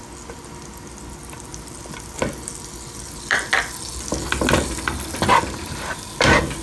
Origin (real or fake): real